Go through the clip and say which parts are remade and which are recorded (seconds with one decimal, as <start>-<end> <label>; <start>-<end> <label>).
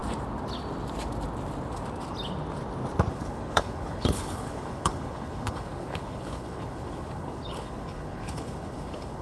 0.0-3.1 recorded; 3.1-9.2 remade